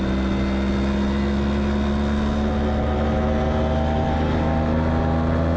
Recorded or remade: recorded